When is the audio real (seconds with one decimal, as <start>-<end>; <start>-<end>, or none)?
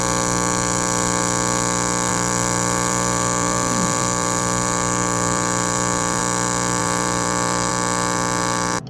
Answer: 0.0-2.1; 6.2-6.8; 7.7-8.9